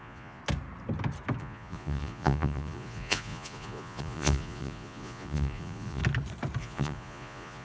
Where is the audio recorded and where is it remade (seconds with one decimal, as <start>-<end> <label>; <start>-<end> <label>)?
0.0-0.4 remade; 0.4-1.4 recorded; 1.4-6.0 remade; 6.0-6.6 recorded; 6.6-7.6 remade